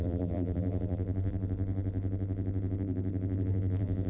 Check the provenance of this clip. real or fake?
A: fake